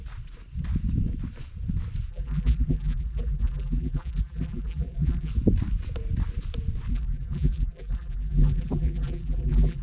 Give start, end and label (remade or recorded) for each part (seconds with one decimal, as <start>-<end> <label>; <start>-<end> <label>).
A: 0.0-2.1 recorded; 2.1-5.3 remade; 5.3-6.9 recorded; 6.9-9.8 remade